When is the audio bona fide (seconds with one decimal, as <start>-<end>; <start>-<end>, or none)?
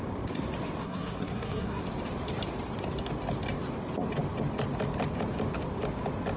0.0-0.8; 1.8-6.4